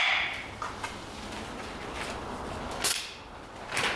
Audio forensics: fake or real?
real